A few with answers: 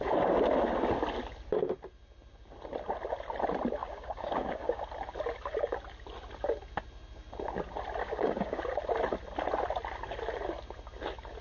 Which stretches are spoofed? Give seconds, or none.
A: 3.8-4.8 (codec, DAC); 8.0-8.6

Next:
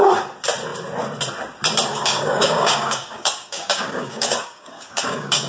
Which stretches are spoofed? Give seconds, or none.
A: 1.9-5.5 (codec, DAC)

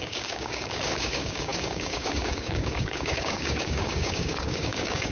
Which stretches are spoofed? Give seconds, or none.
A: 0.0-5.1 (codec, DAC)